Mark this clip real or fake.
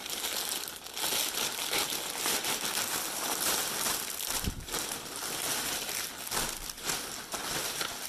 real